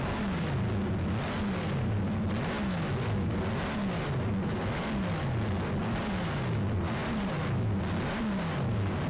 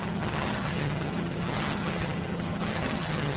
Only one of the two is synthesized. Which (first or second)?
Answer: second